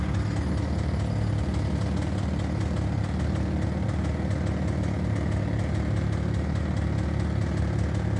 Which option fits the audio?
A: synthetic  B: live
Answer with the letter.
B